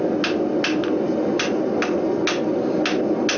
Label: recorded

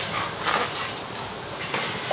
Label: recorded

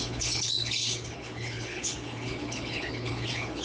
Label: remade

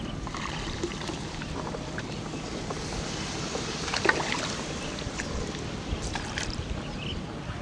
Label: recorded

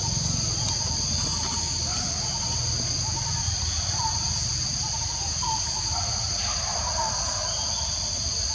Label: recorded